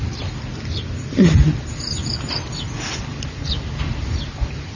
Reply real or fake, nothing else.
real